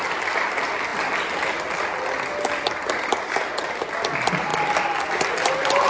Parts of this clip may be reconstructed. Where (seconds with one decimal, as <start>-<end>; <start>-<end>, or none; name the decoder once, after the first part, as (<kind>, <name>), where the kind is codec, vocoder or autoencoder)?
0.9-1.9 (vocoder, BigVGAN v2)